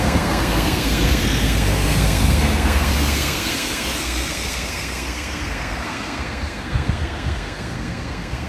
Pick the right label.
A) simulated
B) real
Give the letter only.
A